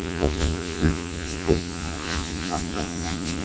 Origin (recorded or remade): remade